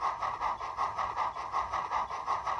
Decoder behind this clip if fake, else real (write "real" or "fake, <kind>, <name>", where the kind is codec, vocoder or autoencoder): real